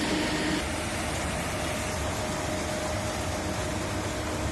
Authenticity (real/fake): real